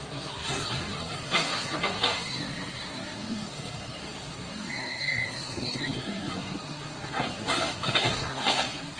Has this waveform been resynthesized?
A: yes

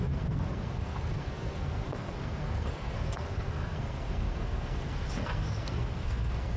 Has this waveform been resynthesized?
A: yes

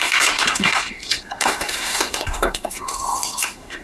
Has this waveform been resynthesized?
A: yes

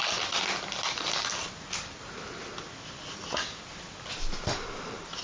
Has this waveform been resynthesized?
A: no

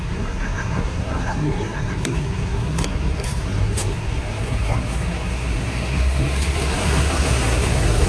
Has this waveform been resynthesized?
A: yes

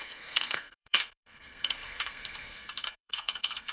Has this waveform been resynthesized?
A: yes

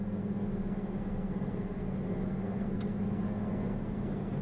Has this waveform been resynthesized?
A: yes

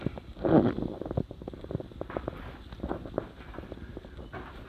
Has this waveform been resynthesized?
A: no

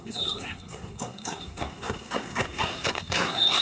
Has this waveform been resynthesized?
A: yes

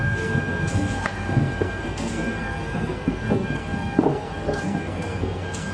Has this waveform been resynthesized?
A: yes